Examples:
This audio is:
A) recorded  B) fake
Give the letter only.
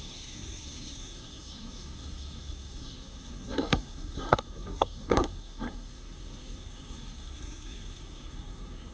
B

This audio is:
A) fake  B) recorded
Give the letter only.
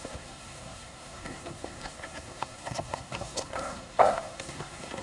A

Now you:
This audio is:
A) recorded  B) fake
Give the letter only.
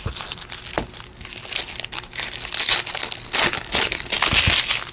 A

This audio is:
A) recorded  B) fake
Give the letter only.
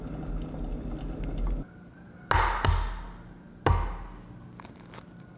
A